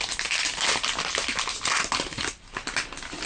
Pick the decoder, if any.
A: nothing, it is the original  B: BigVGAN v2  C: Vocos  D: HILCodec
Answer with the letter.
A